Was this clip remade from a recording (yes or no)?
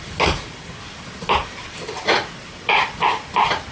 no